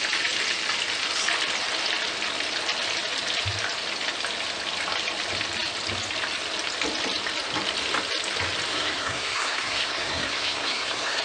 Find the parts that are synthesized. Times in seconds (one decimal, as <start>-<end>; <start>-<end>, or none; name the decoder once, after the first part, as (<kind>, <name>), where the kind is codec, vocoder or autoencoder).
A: 8.7-11.2 (codec, SNAC)